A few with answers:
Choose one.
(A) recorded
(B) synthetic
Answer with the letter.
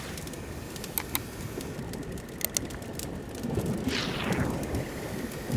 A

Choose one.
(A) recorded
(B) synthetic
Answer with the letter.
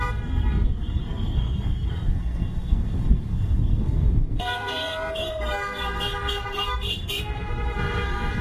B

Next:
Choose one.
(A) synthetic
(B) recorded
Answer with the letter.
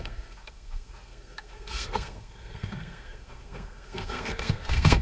A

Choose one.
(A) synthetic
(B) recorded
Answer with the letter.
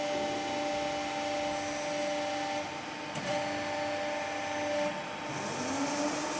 B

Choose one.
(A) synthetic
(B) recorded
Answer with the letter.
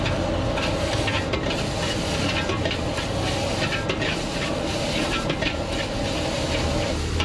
B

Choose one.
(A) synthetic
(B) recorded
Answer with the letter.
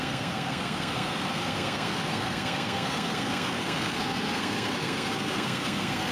A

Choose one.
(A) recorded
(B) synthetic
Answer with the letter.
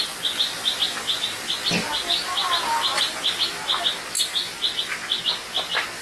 A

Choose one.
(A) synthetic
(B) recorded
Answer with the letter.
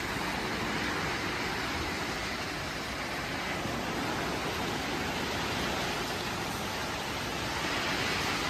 B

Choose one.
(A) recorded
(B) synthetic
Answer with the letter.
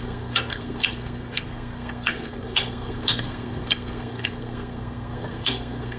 B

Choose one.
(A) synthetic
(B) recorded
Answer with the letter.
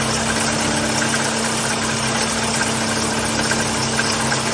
B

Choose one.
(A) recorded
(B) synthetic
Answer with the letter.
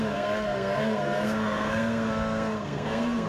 B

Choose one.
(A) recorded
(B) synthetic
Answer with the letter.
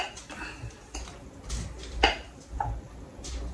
A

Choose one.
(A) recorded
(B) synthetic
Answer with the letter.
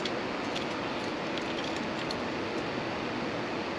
A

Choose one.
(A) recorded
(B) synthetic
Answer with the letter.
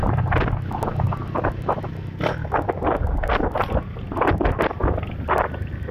A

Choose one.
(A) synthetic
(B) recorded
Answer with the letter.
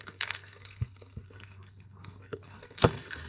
A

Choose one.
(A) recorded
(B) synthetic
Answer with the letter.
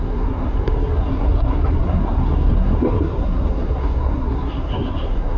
B